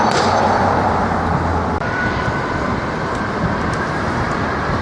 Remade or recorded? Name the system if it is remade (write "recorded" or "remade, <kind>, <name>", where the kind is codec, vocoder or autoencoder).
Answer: remade, vocoder, BigVGAN v2